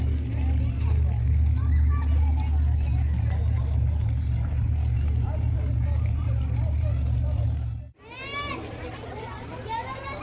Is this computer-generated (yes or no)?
no